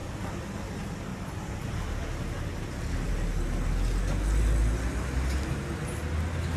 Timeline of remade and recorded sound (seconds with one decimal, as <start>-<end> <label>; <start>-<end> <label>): 0.0-6.6 recorded

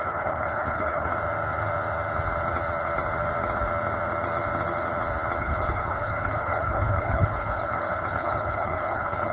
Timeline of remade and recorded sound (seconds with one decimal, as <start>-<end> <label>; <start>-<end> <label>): 0.0-1.1 remade; 1.1-5.4 recorded; 5.4-9.3 remade